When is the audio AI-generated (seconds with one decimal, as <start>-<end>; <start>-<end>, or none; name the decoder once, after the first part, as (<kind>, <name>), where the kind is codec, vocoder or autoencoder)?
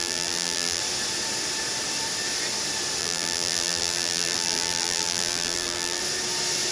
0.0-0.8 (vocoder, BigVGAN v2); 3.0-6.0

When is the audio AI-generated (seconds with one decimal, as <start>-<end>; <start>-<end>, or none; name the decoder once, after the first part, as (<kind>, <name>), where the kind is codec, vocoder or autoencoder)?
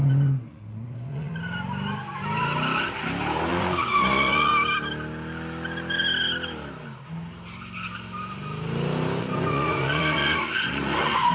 0.0-1.3 (vocoder, Vocos); 3.5-4.5; 9.2-11.3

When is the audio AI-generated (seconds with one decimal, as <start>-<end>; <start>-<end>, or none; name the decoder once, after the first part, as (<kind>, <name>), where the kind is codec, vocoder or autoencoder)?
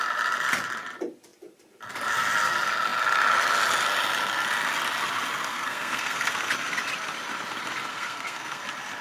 5.5-6.3 (codec, SNAC); 7.9-8.6